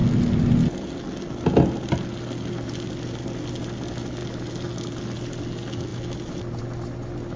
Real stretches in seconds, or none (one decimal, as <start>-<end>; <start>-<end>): 0.0-7.4